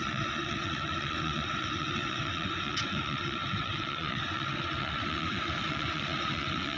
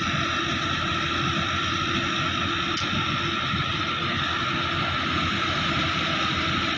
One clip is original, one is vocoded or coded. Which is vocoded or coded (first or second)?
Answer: first